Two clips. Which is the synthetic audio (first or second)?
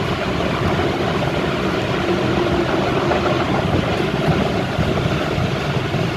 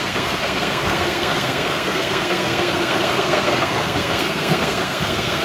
second